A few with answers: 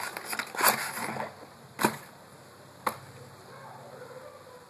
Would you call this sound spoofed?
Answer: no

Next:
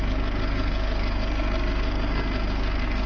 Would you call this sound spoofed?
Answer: yes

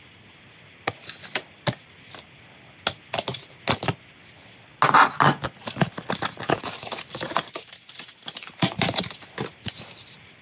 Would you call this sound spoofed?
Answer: no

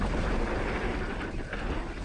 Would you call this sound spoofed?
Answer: no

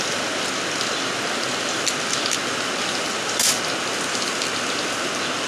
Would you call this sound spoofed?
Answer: no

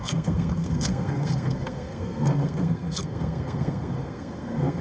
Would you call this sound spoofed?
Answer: yes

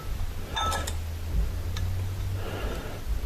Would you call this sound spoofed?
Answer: no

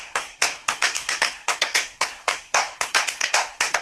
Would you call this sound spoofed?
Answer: yes